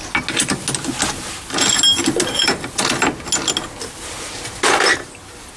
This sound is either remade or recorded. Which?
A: recorded